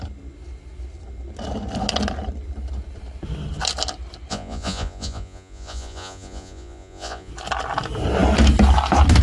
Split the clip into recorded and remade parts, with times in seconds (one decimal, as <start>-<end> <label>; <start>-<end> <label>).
0.0-4.3 recorded; 4.3-7.3 remade; 7.3-9.2 recorded